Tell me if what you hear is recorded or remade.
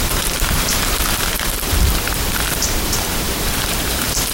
remade